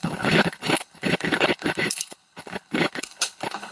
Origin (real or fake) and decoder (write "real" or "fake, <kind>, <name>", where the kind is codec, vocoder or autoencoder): fake, codec, HILCodec